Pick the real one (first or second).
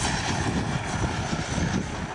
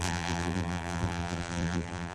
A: first